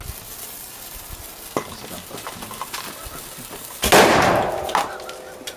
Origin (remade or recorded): recorded